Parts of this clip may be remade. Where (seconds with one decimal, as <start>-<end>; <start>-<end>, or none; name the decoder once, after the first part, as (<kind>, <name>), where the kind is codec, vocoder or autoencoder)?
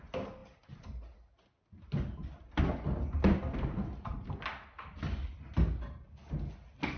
none